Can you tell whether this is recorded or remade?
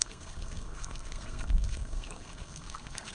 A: remade